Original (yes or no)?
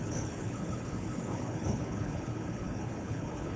no